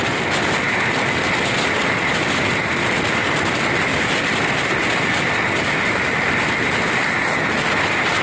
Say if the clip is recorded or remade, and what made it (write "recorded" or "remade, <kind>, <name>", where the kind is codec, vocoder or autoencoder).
recorded